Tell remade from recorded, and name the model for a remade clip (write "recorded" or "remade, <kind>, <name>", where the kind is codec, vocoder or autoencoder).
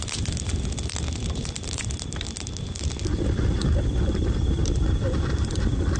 recorded